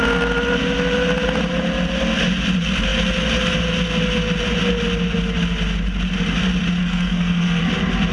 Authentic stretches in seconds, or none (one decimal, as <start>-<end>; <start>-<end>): 0.0-6.8; 7.6-8.1